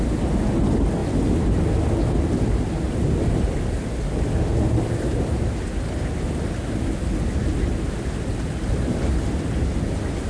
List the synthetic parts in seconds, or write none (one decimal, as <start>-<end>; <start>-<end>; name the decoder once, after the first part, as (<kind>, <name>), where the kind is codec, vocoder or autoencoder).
none